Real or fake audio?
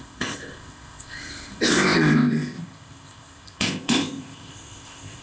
fake